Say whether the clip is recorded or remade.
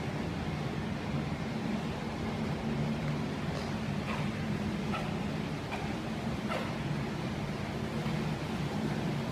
recorded